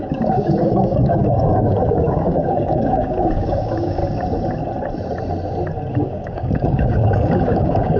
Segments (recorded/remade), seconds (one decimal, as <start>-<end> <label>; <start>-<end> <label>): 0.0-4.0 remade; 4.0-5.9 recorded; 5.9-8.0 remade